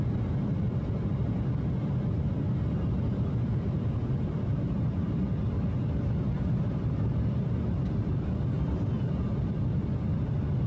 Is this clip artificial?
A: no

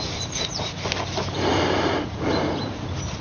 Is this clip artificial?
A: no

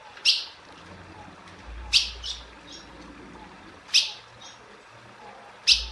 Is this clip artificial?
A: no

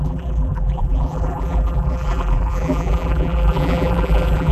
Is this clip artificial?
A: yes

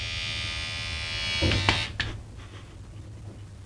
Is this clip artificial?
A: no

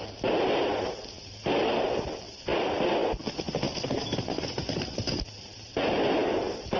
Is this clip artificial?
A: no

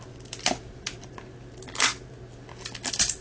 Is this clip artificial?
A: no